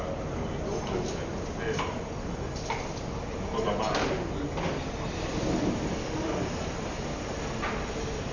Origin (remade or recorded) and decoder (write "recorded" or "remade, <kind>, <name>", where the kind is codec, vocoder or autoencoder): recorded